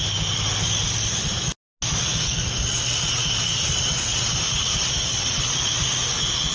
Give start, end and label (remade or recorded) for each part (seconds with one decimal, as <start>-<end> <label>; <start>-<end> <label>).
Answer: 0.0-6.5 recorded

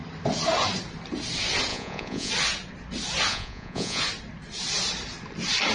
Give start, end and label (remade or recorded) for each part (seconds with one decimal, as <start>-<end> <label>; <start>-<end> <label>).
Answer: 0.0-1.7 recorded; 1.7-2.3 remade; 2.3-3.3 recorded; 3.3-4.0 remade; 4.0-5.7 recorded

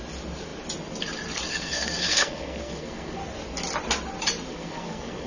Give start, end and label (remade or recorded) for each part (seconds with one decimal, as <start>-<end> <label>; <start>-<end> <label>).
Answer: 0.0-1.5 recorded; 1.5-3.2 remade; 3.2-4.5 recorded; 4.5-5.3 remade

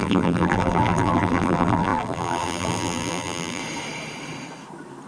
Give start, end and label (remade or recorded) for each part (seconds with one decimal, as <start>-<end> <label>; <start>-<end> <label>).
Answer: 0.0-3.6 remade; 3.6-5.1 recorded

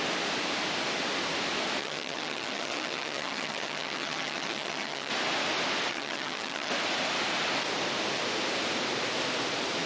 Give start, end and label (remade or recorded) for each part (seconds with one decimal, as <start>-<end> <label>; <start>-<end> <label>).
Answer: 0.0-1.8 recorded; 1.8-5.1 remade; 5.1-5.9 recorded; 5.9-6.7 remade; 6.7-9.9 recorded